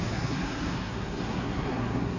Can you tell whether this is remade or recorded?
remade